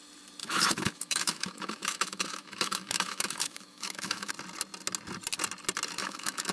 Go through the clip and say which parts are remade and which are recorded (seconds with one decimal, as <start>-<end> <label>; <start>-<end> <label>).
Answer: 0.0-0.4 recorded; 0.4-4.3 remade; 4.3-6.0 recorded; 6.0-6.5 remade